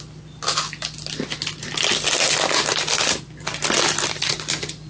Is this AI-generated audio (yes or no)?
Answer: no